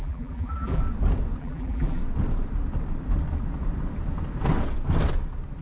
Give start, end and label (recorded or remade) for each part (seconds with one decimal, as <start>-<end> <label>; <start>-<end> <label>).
0.0-0.8 remade; 0.8-1.4 recorded; 1.4-2.0 remade; 2.0-5.6 recorded